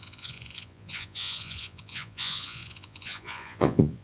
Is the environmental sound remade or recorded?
remade